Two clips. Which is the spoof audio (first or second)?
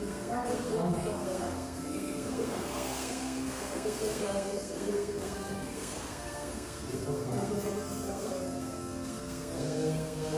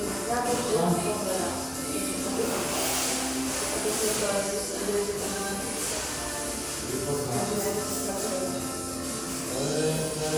first